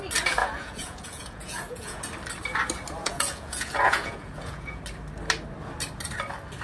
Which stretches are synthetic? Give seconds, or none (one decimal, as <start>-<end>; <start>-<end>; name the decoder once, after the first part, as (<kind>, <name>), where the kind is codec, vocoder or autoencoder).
0.4-2.0 (vocoder, Vocos); 3.0-4.8